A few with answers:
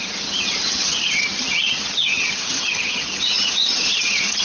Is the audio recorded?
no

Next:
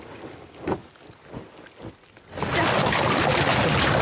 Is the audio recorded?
yes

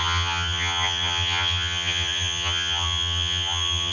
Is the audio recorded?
no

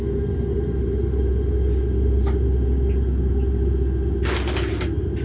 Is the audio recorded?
yes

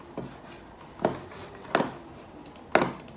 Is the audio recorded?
yes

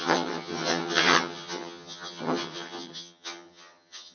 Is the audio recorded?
no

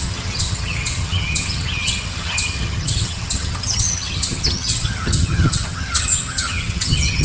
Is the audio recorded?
no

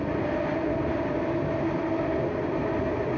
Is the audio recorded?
yes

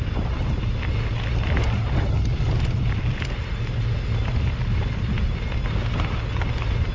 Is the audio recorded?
yes